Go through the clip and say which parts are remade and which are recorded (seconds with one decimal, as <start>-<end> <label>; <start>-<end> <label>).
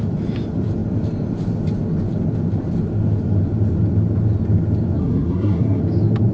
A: 0.0-5.0 recorded; 5.0-5.8 remade; 5.8-6.3 recorded